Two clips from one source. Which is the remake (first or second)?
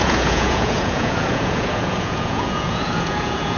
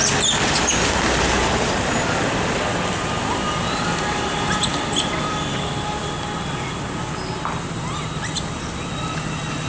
first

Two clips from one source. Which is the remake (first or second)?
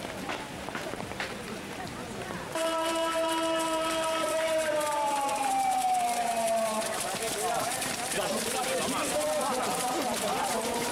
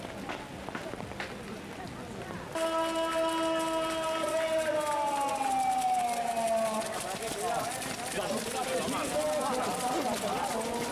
first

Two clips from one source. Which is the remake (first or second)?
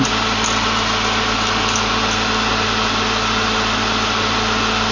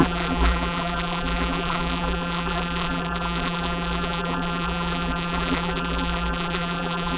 second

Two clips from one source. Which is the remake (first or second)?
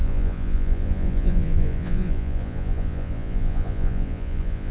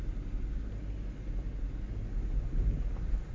first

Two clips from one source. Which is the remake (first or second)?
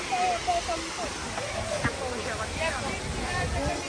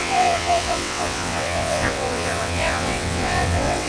second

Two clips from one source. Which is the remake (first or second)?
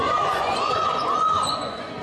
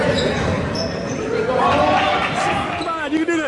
first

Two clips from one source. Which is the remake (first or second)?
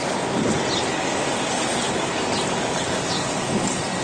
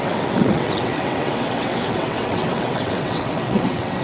second